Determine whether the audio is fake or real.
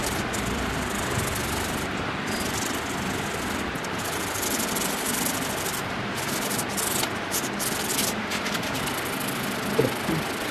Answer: fake